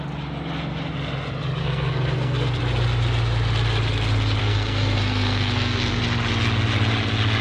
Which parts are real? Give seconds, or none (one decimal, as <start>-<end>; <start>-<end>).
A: 0.0-1.6; 2.6-4.4; 6.0-7.4